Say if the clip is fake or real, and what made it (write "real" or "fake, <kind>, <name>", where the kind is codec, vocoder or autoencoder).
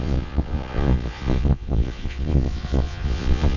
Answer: fake, vocoder, Vocos